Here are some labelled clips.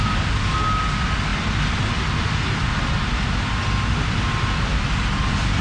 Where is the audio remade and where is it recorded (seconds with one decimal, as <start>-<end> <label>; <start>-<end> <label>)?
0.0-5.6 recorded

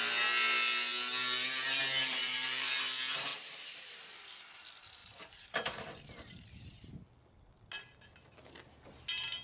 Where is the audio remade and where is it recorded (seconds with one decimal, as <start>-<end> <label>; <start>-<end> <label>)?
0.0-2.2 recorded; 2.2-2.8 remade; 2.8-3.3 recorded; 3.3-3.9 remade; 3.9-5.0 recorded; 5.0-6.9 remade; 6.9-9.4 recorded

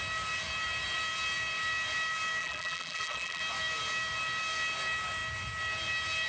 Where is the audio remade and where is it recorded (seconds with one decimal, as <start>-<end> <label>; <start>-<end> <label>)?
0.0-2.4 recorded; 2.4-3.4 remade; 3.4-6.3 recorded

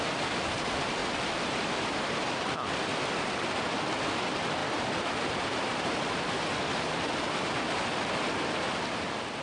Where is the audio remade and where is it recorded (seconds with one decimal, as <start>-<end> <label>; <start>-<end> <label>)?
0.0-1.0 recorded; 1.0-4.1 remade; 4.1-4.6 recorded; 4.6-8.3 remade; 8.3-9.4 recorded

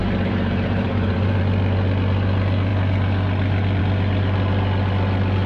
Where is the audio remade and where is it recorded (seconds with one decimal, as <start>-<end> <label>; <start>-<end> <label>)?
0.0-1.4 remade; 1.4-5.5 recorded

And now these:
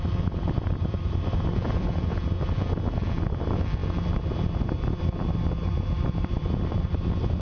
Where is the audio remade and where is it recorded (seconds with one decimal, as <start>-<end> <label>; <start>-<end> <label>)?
0.0-2.2 remade; 2.2-3.2 recorded; 3.2-3.8 remade; 3.8-5.0 recorded; 5.0-7.4 remade